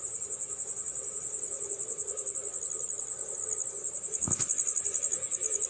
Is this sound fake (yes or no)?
no